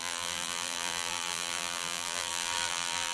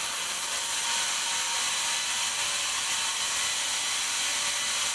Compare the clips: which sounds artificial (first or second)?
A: first